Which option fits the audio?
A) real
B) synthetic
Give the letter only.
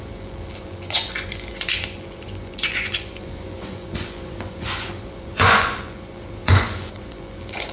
B